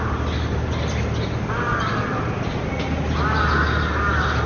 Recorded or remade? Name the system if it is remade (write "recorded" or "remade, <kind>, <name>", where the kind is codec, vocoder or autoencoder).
recorded